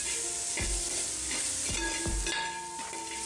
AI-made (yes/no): no